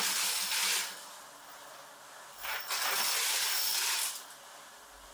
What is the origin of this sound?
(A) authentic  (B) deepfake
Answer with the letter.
A